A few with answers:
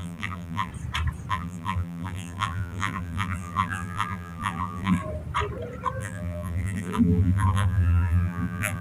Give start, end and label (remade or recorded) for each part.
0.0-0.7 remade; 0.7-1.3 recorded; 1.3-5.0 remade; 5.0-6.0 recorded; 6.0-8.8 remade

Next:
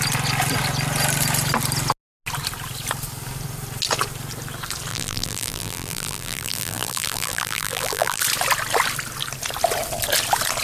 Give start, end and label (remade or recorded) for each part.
0.0-4.9 recorded; 4.9-8.2 remade; 8.2-10.6 recorded

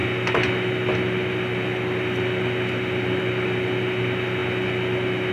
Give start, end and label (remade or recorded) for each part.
0.0-5.3 recorded